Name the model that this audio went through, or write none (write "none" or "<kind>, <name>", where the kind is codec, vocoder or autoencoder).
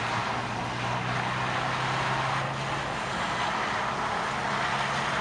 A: none